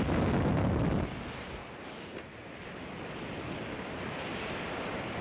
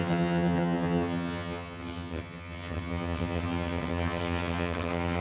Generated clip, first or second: second